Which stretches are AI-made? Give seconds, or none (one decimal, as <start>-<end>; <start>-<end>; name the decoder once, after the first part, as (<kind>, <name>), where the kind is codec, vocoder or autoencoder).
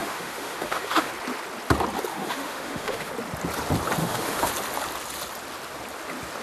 0.0-1.1 (autoencoder, DAC-VAE); 2.1-3.1; 4.0-4.5